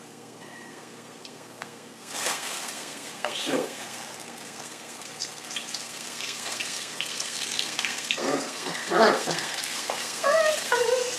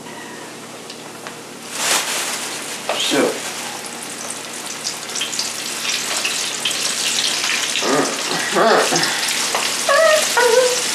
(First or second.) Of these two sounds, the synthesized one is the first